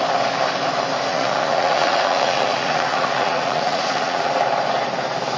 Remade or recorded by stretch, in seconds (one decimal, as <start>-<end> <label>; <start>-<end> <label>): 0.0-1.1 recorded; 1.1-4.3 remade; 4.3-5.4 recorded